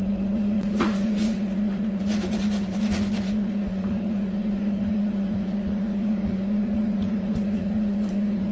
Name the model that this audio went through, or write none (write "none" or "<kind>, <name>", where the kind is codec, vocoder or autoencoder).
vocoder, Vocos